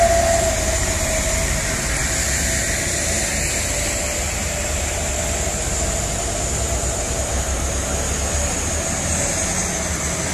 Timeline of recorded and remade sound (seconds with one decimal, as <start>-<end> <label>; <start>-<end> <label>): 0.0-4.4 recorded; 4.4-8.0 remade; 8.0-10.3 recorded